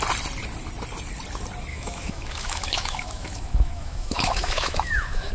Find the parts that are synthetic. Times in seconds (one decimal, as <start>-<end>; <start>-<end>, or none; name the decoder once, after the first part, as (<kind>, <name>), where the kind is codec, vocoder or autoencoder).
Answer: 1.7-5.3 (autoencoder, DAC-VAE)